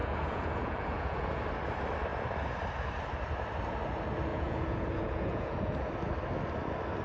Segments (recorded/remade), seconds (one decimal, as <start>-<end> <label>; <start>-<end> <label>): 0.0-1.4 remade; 1.4-4.3 recorded; 4.3-5.9 remade; 5.9-7.0 recorded